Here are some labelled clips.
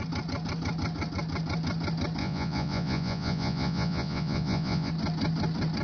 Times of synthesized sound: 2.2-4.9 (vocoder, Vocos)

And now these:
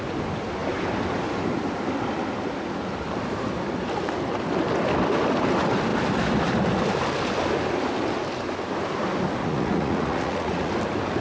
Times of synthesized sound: 9.4-10.7 (vocoder, Vocos)

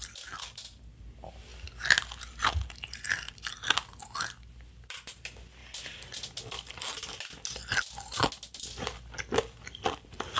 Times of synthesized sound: none

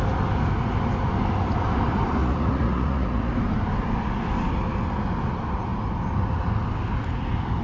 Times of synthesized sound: 2.2-3.3 (vocoder, Vocos)